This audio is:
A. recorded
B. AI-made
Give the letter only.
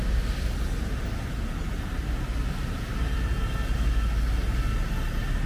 A